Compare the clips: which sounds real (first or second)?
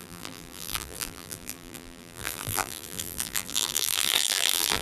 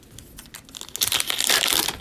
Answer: second